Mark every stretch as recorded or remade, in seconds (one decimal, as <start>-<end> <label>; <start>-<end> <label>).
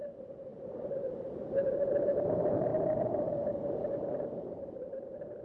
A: 0.0-5.4 remade